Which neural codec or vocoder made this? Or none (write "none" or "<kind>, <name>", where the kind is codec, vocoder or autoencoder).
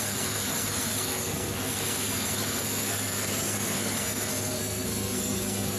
codec, SNAC